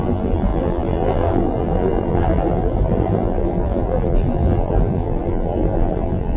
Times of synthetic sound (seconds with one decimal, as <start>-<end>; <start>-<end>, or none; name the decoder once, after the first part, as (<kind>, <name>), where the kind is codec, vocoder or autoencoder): 0.0-6.4 (vocoder, BigVGAN v2)